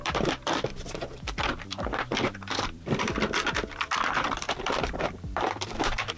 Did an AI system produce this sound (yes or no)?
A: yes